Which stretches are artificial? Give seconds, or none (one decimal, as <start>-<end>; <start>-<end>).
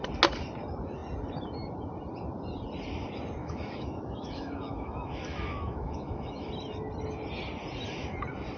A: 3.4-6.5